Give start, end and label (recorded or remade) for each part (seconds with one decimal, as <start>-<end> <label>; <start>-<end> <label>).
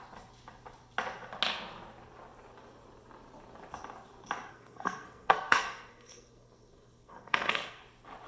0.0-4.5 recorded; 4.5-7.8 remade; 7.8-8.3 recorded